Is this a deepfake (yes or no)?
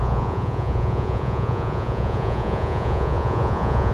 yes